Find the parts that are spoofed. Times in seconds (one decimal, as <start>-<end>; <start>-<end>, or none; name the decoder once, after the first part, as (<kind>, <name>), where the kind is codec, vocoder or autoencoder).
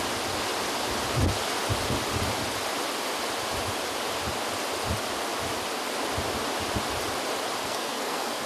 7.6-8.5 (codec, SNAC)